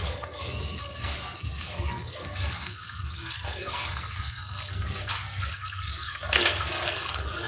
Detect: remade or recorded remade